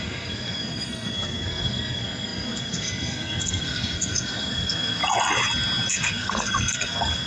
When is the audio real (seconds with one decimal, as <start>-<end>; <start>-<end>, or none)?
5.0-5.9